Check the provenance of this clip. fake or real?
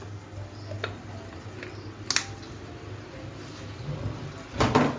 real